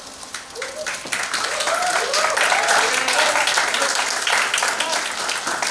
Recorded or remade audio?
recorded